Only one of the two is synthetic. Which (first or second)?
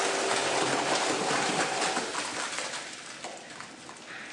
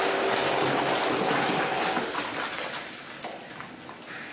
first